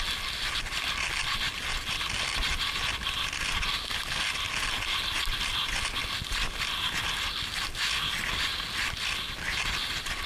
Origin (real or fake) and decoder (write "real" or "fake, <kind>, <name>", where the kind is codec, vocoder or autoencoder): real